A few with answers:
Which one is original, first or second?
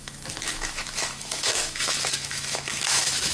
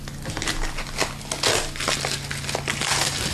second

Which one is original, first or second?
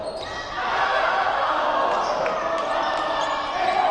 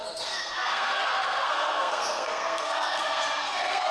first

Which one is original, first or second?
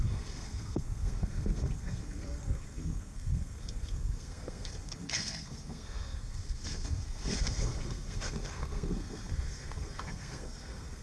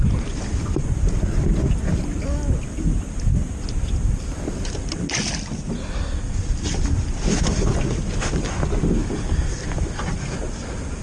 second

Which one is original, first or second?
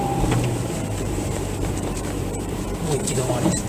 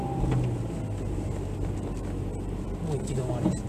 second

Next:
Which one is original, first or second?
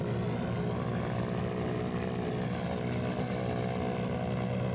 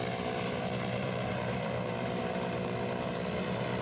first